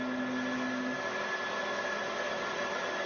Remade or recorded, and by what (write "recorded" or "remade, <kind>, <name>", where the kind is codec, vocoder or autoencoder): recorded